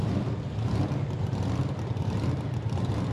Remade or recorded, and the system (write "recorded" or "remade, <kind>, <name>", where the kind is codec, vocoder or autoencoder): recorded